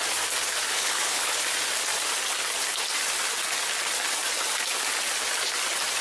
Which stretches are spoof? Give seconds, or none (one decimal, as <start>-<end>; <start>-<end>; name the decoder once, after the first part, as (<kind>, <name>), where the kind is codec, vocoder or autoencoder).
0.7-1.4 (codec, HILCodec)